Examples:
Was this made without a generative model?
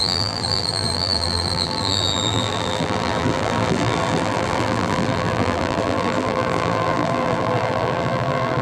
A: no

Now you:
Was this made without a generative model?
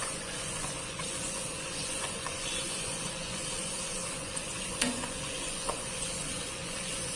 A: no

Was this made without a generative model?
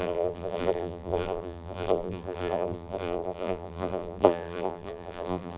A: no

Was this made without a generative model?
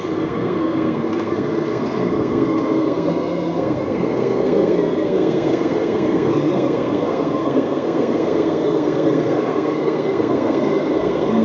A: no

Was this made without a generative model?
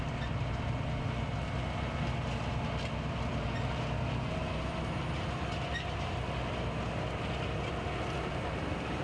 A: yes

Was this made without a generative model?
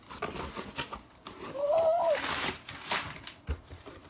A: yes